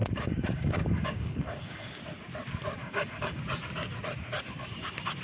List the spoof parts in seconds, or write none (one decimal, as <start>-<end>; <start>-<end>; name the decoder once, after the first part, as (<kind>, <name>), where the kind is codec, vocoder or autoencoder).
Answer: 0.0-1.9 (codec, DAC); 2.8-3.4